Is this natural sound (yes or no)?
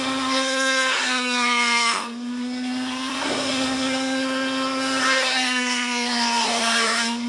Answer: no